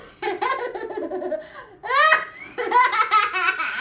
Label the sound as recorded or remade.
recorded